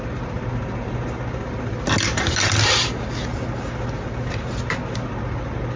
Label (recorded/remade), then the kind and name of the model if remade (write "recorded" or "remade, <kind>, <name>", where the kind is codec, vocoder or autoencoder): recorded